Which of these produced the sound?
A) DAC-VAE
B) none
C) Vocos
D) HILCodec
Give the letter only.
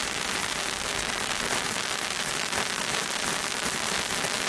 B